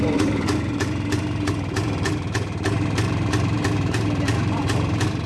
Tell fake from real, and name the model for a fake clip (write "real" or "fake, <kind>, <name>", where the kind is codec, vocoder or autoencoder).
fake, vocoder, BigVGAN v2